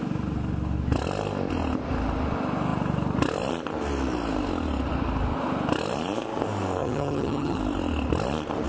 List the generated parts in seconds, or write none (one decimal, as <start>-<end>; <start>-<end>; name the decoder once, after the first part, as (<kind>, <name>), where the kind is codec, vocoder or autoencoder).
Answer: 6.8-7.6 (vocoder, HiFi-GAN)